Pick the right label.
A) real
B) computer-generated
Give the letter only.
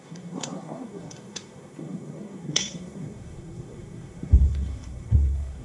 B